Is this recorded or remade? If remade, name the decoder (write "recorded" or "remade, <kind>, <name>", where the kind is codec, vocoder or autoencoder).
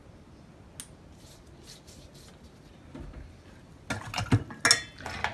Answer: recorded